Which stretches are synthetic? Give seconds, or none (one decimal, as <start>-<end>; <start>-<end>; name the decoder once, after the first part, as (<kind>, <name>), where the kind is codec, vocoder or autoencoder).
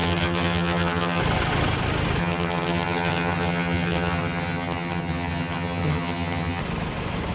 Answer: 0.0-1.2 (vocoder, HiFi-GAN); 2.2-6.6